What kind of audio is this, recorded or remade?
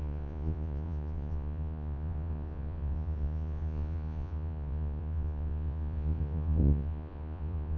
remade